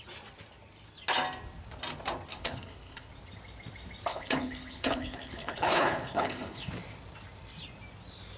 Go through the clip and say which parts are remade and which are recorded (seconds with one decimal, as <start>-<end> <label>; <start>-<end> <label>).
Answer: 0.0-2.3 recorded; 2.3-3.1 remade; 3.1-4.1 recorded; 4.1-6.7 remade; 6.7-8.4 recorded